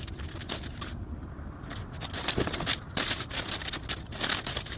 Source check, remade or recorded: recorded